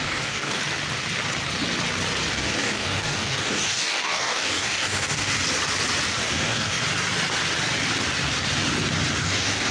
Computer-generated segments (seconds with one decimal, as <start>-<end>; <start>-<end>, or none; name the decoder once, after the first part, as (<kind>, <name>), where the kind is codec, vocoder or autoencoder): 0.0-0.6 (codec, DAC); 2.3-5.3; 6.2-6.8; 9.2-9.7